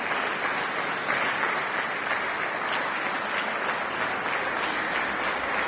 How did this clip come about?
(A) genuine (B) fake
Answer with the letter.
A